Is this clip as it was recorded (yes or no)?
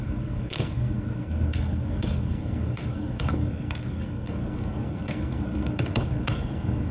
no